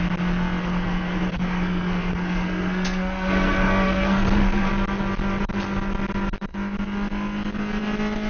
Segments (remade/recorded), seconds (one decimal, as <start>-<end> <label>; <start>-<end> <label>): 0.0-0.6 recorded; 0.6-4.7 remade; 4.7-8.3 recorded